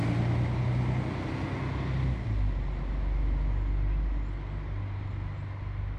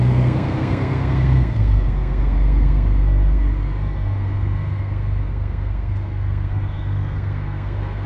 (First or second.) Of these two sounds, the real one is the first